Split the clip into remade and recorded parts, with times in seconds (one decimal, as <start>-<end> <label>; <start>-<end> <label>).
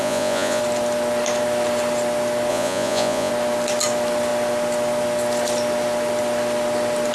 0.0-0.6 remade; 0.6-2.5 recorded; 2.5-3.3 remade; 3.3-7.1 recorded